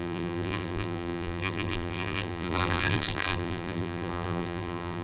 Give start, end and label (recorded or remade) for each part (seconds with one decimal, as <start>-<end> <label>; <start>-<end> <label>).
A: 0.0-5.0 remade